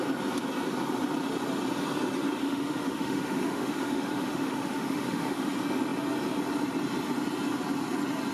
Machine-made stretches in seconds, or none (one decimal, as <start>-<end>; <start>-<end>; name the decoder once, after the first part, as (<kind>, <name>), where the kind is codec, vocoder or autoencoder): 2.4-5.5 (autoencoder, DAC-VAE)